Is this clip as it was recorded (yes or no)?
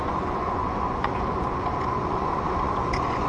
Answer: no